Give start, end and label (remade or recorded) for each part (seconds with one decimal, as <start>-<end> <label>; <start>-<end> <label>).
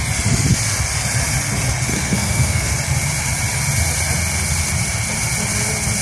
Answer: 0.0-1.9 recorded; 1.9-2.7 remade; 2.7-6.0 recorded